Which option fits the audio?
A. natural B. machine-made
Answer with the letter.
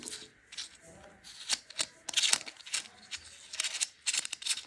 A